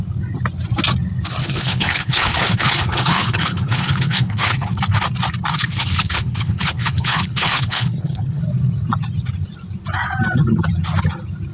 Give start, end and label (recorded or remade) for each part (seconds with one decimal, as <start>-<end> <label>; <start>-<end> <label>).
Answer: 0.0-1.4 recorded; 1.4-4.8 remade; 4.8-5.5 recorded; 5.5-8.4 remade; 8.4-11.5 recorded

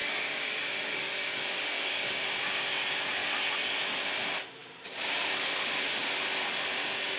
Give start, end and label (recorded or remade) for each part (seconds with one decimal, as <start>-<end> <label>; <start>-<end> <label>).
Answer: 0.0-2.3 remade; 2.3-7.2 recorded